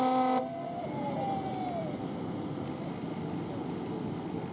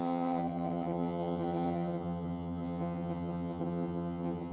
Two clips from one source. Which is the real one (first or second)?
first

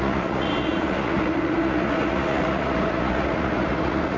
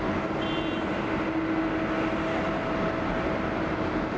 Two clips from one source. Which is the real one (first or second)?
second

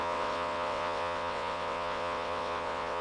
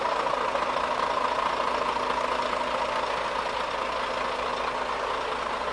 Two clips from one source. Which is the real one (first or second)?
second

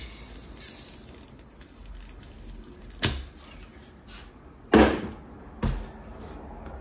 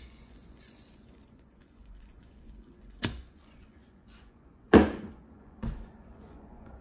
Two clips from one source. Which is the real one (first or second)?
first